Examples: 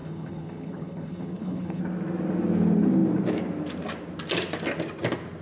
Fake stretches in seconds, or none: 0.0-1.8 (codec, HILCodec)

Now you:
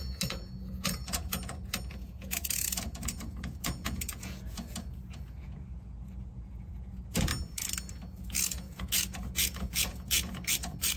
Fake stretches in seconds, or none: 0.0-7.3 (vocoder, Vocos); 8.2-11.0

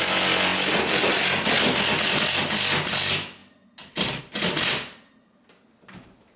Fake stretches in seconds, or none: none

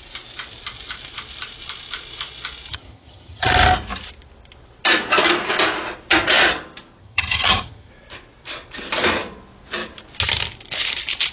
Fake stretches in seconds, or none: 2.7-3.5 (vocoder, HiFi-GAN); 7.0-7.9

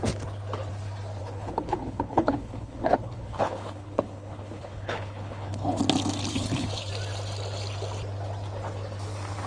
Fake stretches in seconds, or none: 1.2-5.8 (codec, HILCodec); 6.3-6.9

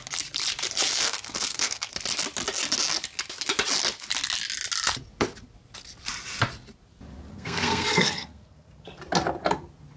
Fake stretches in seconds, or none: 0.9-1.9 (codec, SNAC); 7.3-9.0

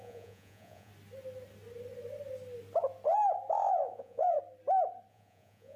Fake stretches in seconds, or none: 0.0-0.9 (vocoder, Vocos); 3.7-4.4; 5.1-5.8

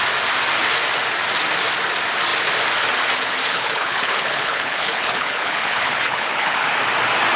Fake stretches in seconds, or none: 3.5-6.7 (codec, HILCodec)